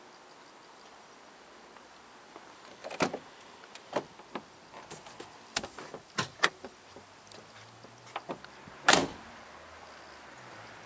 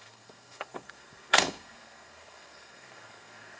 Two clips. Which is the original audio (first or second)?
first